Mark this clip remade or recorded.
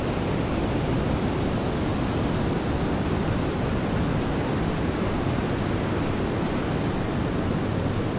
recorded